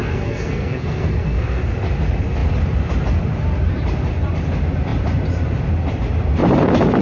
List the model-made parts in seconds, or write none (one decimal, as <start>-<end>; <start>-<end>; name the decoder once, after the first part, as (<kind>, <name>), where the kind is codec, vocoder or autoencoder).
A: 0.0-1.6 (codec, SNAC)